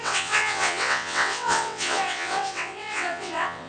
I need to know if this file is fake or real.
fake